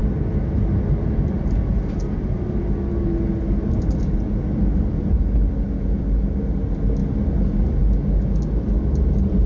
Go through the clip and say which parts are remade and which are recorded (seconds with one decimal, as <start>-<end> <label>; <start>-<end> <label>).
0.0-9.5 recorded